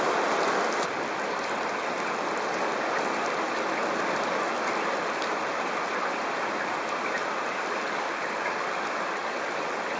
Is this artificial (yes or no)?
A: no